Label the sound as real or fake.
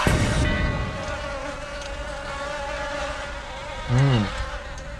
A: real